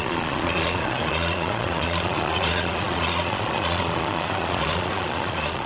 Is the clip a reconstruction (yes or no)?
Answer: yes